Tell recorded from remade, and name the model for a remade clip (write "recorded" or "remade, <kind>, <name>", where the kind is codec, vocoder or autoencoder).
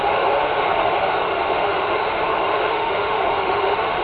remade, autoencoder, DAC-VAE